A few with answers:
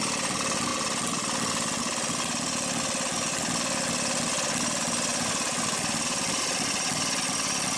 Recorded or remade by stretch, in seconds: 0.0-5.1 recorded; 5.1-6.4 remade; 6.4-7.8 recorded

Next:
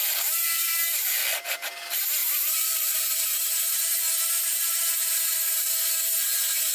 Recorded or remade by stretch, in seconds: 0.0-0.7 remade; 0.7-2.2 recorded; 2.2-3.0 remade; 3.0-4.5 recorded; 4.5-5.3 remade; 5.3-6.7 recorded

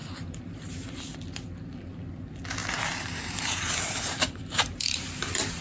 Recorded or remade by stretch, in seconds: 0.0-1.0 remade; 1.0-2.6 recorded; 2.6-5.6 remade